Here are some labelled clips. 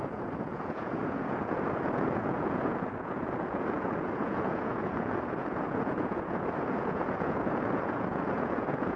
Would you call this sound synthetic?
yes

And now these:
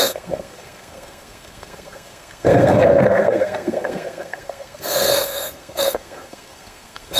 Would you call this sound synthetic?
yes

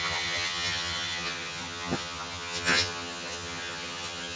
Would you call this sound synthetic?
yes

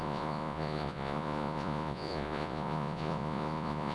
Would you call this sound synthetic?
yes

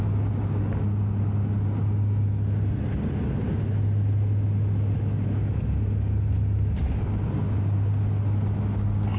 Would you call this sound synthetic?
no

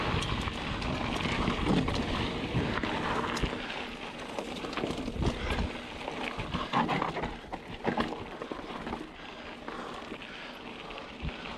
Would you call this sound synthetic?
no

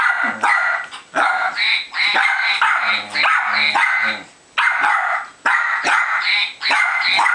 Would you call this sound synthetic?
no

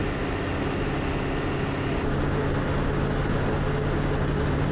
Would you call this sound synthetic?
no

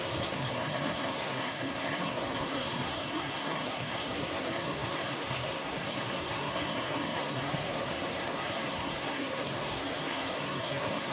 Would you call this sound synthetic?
yes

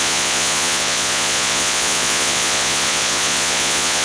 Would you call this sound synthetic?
yes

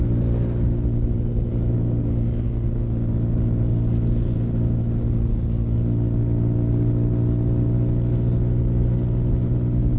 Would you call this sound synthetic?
no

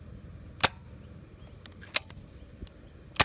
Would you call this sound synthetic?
no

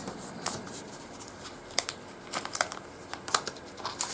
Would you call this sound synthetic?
yes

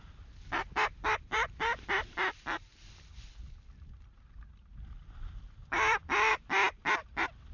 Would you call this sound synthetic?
yes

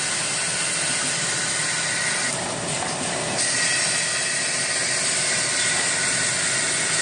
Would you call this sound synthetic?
no